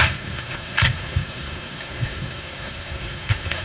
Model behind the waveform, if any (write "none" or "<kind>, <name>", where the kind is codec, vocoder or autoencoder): codec, SNAC